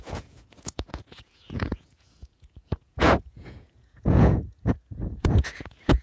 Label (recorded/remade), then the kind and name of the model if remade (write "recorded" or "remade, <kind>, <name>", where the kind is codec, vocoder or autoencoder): remade, vocoder, Vocos